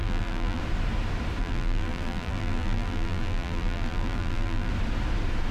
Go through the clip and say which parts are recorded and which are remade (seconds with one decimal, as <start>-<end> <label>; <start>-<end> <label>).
0.0-0.6 remade; 0.6-1.4 recorded; 1.4-4.7 remade; 4.7-5.5 recorded